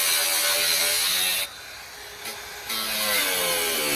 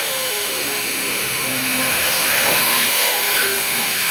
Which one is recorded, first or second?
first